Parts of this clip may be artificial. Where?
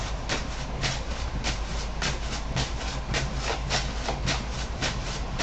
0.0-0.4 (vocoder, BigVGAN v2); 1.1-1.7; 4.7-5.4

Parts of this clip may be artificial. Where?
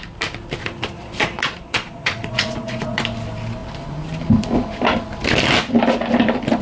0.6-3.0 (vocoder, Vocos)